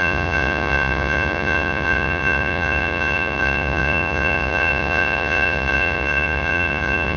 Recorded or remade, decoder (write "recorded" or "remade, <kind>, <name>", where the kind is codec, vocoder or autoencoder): remade, vocoder, Vocos